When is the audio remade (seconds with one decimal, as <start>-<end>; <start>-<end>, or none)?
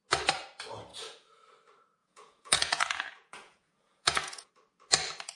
0.9-1.4; 2.0-4.5